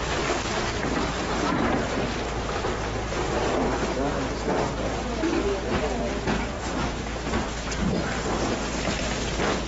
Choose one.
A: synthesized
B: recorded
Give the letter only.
B